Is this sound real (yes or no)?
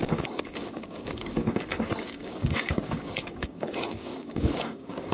no